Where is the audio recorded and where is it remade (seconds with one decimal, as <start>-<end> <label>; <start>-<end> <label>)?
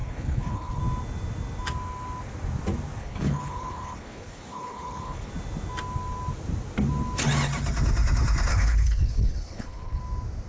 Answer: 0.0-0.8 remade; 0.8-3.0 recorded; 3.0-5.3 remade; 5.3-8.5 recorded; 8.5-10.0 remade; 10.0-10.5 recorded